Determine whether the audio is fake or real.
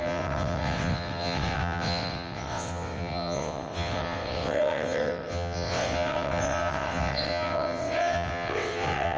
fake